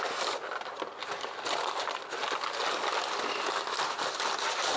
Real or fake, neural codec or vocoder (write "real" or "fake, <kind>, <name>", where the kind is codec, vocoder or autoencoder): real